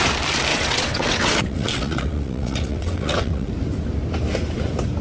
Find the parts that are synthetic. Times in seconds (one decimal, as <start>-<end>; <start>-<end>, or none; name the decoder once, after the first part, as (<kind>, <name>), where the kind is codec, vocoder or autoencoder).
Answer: 0.5-3.5 (vocoder, WaveNeXt)